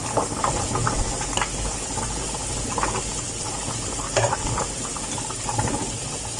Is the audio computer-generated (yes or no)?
no